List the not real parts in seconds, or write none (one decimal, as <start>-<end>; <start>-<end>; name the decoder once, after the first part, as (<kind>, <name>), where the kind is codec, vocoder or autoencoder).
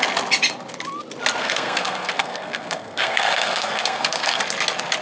1.4-4.4 (codec, SNAC)